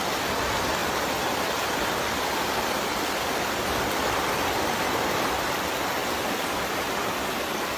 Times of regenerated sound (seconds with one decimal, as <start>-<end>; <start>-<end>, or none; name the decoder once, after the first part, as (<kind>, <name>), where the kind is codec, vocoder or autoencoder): 0.8-4.8 (vocoder, BigVGAN v2); 6.0-7.8